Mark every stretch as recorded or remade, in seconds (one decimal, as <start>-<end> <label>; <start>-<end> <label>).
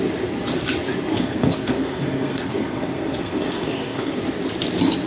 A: 0.0-1.1 recorded; 1.1-4.2 remade; 4.2-5.1 recorded